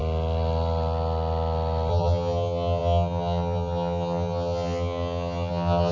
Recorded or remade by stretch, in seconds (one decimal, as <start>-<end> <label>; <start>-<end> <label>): 0.0-1.9 recorded; 1.9-5.9 remade